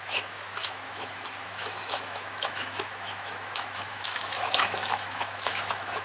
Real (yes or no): no